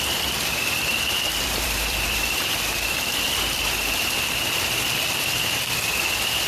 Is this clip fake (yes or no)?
yes